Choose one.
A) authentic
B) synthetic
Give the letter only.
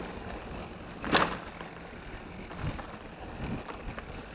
A